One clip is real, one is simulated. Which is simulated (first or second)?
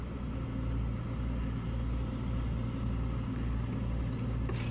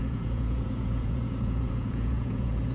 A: second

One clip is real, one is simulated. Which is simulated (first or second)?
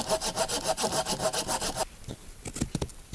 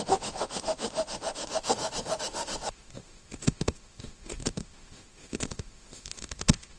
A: second